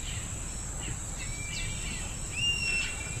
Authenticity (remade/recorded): recorded